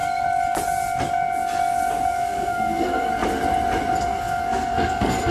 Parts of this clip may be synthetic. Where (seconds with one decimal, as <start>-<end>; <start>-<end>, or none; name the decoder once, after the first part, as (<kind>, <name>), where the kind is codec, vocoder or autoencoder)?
2.1-3.1 (codec, SNAC); 4.0-5.3